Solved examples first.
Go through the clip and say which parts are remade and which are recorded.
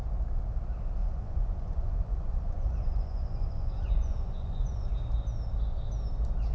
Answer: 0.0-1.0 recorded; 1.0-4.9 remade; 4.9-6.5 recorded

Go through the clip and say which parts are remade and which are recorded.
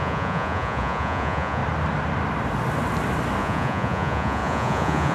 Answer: 0.0-1.6 remade; 1.6-3.4 recorded; 3.4-5.1 remade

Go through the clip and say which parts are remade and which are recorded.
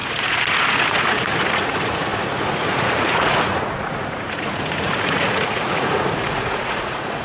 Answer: 0.0-7.2 remade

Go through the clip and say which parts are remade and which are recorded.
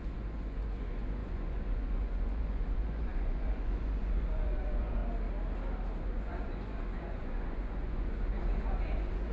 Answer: 0.0-5.0 remade; 5.0-6.0 recorded; 6.0-9.3 remade